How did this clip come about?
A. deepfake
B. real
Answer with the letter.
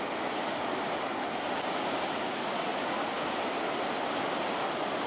B